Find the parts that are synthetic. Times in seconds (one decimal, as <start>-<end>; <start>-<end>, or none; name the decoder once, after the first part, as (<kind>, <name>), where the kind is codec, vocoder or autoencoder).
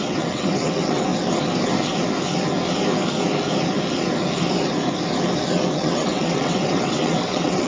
0.0-1.1 (vocoder, WaveNeXt); 5.7-7.7